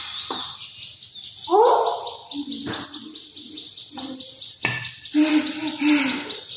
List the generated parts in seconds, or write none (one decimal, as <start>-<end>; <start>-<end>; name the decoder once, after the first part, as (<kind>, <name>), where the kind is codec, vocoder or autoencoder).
2.2-6.6 (vocoder, BigVGAN v2)